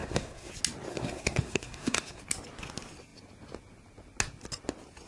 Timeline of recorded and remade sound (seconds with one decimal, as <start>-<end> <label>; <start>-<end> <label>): 0.0-0.5 remade; 0.5-0.9 recorded; 0.9-2.2 remade; 2.2-5.1 recorded

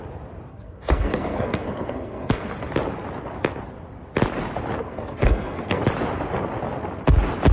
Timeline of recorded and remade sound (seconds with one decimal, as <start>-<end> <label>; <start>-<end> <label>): 0.0-0.5 recorded; 0.5-2.5 remade; 2.5-4.8 recorded; 4.8-5.8 remade; 5.8-7.5 recorded

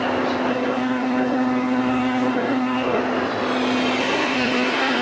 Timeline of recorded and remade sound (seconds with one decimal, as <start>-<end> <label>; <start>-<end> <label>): 0.0-0.5 recorded; 0.5-3.0 remade; 3.0-4.0 recorded; 4.0-5.0 remade

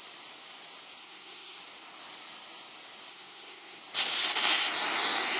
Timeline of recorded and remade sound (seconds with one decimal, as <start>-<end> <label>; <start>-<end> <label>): 0.0-1.0 recorded; 1.0-1.6 remade; 1.6-3.1 recorded; 3.1-3.8 remade; 3.8-5.4 recorded

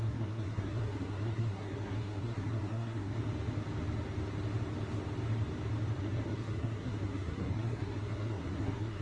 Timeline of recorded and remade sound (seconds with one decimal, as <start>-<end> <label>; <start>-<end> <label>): 0.0-3.2 remade; 3.2-6.0 recorded; 6.0-9.0 remade

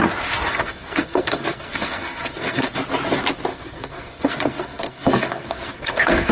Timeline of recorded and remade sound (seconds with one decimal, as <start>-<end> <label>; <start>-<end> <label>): 0.0-0.5 recorded; 0.5-2.8 remade; 2.8-3.5 recorded; 3.5-6.3 remade